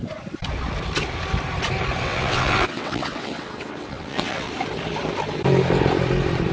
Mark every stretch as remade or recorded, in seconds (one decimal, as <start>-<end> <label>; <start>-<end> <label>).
0.0-2.0 recorded; 2.0-4.5 remade; 4.5-6.5 recorded